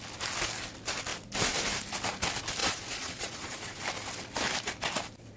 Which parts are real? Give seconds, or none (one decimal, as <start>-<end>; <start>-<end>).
0.0-2.6; 3.8-5.4

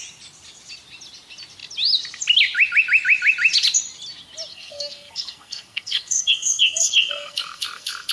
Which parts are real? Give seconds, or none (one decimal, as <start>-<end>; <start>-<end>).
0.0-4.5

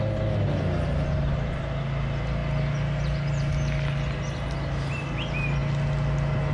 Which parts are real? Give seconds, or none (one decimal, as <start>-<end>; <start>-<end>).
0.0-6.5

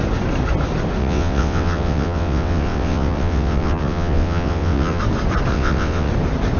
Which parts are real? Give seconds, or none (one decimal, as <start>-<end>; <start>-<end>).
0.0-1.0; 5.0-5.5; 6.1-6.6